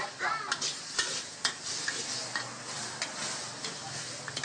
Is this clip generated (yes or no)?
no